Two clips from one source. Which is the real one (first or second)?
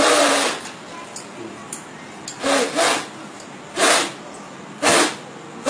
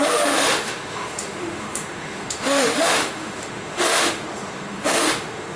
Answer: first